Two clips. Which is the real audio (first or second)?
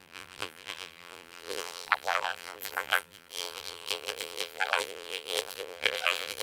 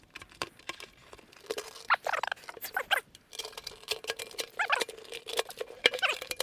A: second